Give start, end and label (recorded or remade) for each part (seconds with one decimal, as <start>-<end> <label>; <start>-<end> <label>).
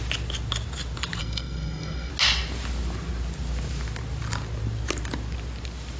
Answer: 0.0-1.2 recorded; 1.2-2.1 remade; 2.1-6.0 recorded